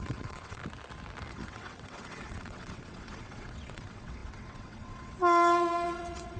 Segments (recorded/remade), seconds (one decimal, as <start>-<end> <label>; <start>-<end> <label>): 0.0-0.6 remade; 0.6-1.3 recorded; 1.3-6.4 remade